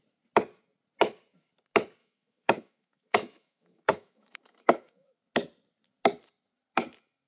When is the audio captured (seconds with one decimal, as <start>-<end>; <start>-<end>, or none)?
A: 0.0-2.0; 5.2-7.3